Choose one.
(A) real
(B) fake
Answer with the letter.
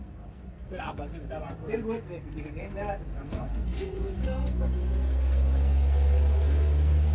B